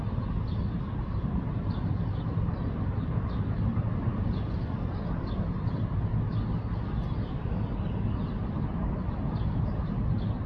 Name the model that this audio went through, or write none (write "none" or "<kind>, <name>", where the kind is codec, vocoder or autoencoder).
none